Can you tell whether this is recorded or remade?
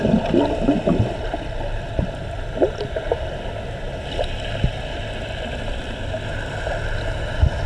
recorded